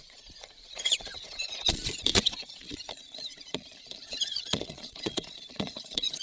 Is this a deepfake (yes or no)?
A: yes